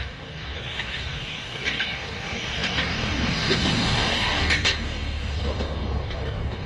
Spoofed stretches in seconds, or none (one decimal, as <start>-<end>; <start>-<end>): 0.0-6.7